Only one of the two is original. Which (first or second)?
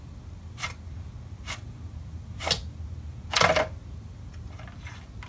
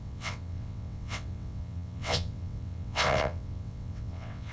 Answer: first